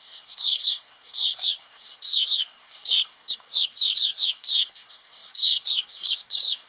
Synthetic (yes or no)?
yes